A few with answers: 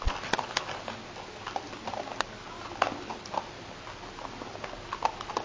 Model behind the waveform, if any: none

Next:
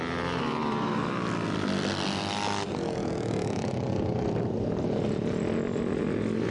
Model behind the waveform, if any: none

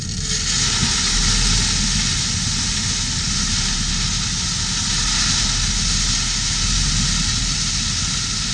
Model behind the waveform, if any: none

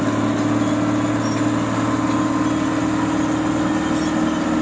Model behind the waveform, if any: none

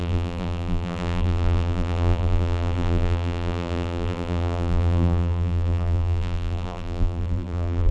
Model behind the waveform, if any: vocoder, BigVGAN v2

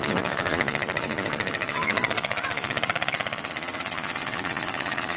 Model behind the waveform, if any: vocoder, Vocos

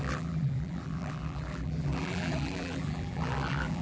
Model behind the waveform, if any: vocoder, BigVGAN v2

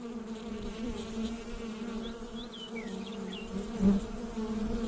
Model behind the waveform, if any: none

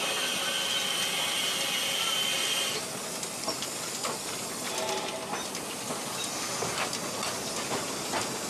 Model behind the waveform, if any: none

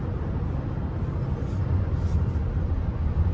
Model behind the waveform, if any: none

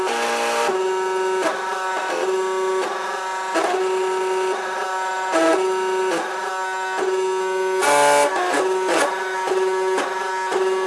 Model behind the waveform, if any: none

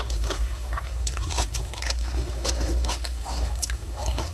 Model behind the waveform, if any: codec, SNAC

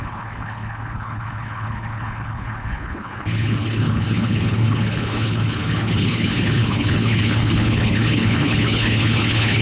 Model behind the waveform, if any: codec, HILCodec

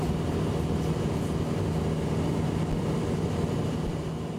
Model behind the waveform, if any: none